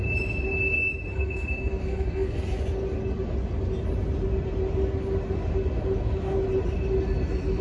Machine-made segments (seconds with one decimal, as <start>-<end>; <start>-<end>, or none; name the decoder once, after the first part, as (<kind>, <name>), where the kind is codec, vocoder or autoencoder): 1.1-2.4 (codec, SNAC)